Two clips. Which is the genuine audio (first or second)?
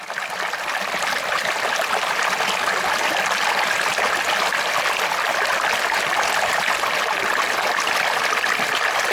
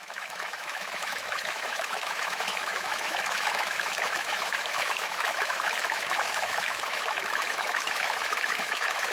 first